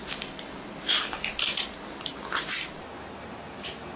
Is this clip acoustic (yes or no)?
yes